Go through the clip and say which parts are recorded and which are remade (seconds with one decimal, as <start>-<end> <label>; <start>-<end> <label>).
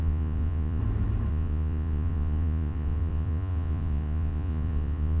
0.0-0.8 remade; 0.8-1.3 recorded; 1.3-5.2 remade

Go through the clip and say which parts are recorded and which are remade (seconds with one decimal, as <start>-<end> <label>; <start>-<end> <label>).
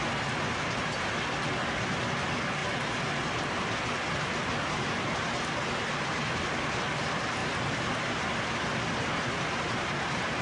0.0-10.4 recorded